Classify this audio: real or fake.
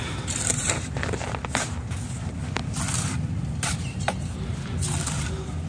fake